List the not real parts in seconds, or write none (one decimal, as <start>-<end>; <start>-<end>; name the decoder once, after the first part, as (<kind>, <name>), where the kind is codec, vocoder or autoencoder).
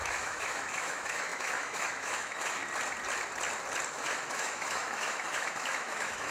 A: 0.0-2.6 (autoencoder, DAC-VAE); 3.9-6.3